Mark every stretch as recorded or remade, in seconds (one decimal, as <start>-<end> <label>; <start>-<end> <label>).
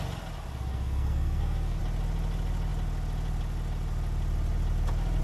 0.0-0.7 recorded; 0.7-1.8 remade; 1.8-5.2 recorded